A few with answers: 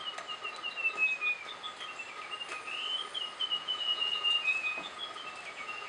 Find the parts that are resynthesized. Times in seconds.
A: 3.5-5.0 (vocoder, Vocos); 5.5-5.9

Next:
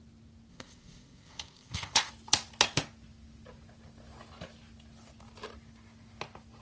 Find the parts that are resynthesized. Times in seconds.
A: 0.5-2.1 (codec, ZipCodec)

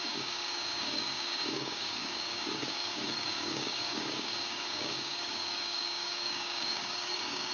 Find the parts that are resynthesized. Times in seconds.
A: 0.0-7.5 (codec, DAC)

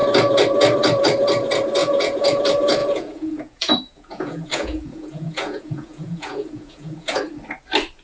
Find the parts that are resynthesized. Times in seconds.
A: 1.8-2.4 (vocoder, Vocos); 2.8-7.2

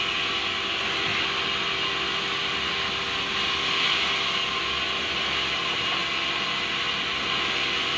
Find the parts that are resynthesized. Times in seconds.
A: none

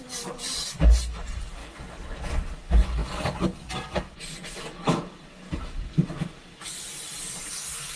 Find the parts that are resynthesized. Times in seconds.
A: 1.6-2.3 (codec, HILCodec)

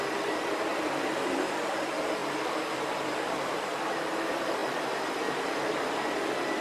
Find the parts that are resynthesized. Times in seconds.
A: 0.7-1.7 (vocoder, BigVGAN v2); 2.2-3.8; 4.6-5.3

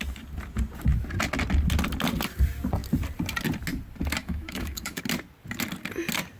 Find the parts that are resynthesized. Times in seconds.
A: 4.2-5.0 (autoencoder, DAC-VAE)